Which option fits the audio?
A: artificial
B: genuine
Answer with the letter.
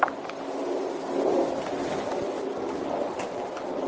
B